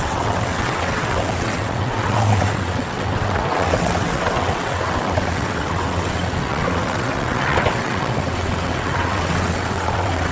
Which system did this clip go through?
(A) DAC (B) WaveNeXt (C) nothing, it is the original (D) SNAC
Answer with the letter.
B